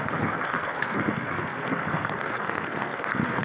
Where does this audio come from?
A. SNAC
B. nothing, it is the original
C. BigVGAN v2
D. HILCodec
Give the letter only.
A